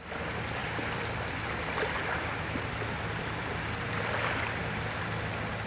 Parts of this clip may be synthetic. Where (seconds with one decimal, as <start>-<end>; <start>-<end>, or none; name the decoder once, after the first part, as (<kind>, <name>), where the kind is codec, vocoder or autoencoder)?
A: none